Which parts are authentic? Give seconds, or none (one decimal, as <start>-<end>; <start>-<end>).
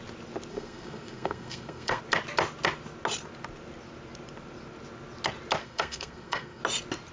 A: 0.0-0.5; 2.0-5.6; 6.6-7.1